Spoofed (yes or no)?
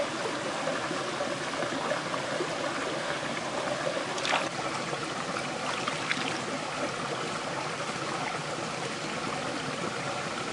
no